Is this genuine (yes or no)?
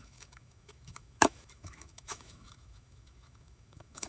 no